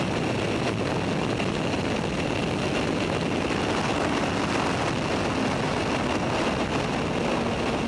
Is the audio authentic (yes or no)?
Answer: yes